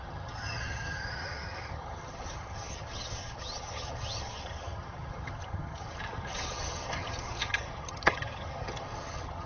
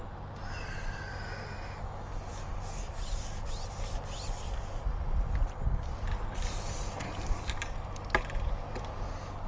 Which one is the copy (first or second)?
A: first